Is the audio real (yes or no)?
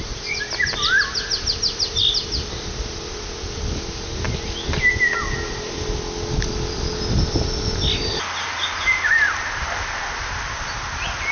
yes